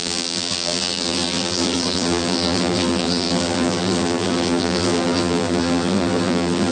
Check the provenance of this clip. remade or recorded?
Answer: remade